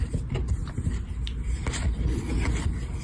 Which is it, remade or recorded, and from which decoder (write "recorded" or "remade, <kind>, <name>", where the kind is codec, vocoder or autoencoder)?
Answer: recorded